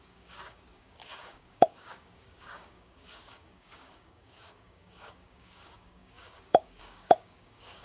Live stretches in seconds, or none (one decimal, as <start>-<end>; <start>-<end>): none